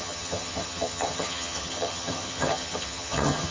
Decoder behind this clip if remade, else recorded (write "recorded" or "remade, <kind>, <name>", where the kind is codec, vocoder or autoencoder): remade, vocoder, HiFi-GAN